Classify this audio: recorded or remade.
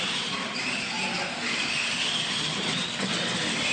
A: recorded